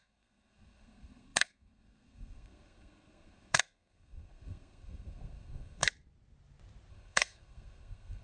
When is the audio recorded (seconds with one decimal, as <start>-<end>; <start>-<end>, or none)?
5.8-6.9